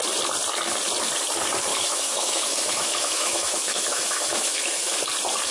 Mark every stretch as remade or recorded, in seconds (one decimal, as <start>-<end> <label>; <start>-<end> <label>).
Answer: 0.0-1.7 recorded; 1.7-5.0 remade; 5.0-5.5 recorded